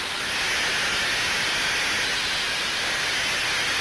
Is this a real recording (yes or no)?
yes